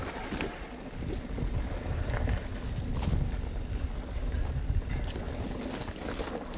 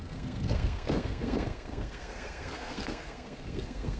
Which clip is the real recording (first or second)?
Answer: first